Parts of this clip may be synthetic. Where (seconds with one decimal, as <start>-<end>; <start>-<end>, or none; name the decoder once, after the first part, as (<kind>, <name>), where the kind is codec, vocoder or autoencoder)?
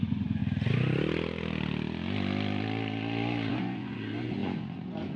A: 0.0-0.4 (vocoder, Vocos); 3.5-5.2